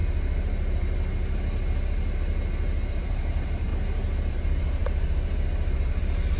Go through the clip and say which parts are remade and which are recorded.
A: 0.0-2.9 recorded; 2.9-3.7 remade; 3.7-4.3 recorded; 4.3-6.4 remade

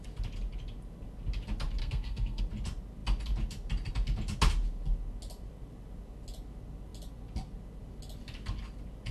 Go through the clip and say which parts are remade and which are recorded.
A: 0.0-1.8 recorded; 1.8-2.4 remade; 2.4-9.1 recorded

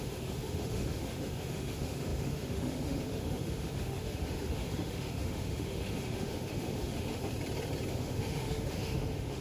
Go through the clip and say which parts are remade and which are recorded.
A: 0.0-7.3 remade; 7.3-7.9 recorded; 7.9-9.4 remade

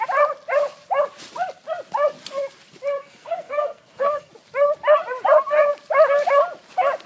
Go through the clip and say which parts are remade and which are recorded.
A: 0.0-3.0 recorded; 3.0-4.3 remade; 4.3-7.1 recorded